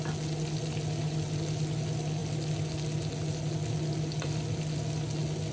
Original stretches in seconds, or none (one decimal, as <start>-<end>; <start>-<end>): 0.0-5.5